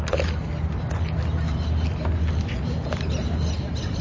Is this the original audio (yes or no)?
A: yes